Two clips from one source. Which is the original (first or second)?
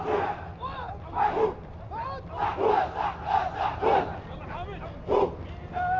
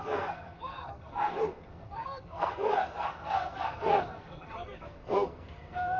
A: first